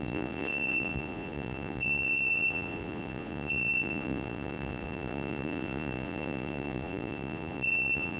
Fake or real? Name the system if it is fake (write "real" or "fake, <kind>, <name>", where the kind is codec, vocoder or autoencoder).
fake, vocoder, Vocos